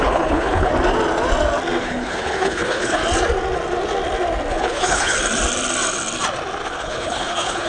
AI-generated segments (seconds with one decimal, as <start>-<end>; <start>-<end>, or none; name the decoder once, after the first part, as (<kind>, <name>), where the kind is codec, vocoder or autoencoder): 0.0-0.7 (codec, HILCodec); 1.8-3.0; 4.5-5.2; 6.7-7.7